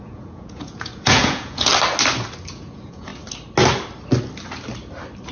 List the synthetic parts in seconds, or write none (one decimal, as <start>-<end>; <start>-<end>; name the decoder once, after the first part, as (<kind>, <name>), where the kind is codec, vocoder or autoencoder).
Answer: 0.0-1.7 (vocoder, Vocos); 2.5-3.1